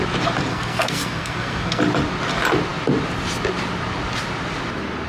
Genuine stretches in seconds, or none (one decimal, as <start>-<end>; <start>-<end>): 0.0-0.5; 1.8-5.1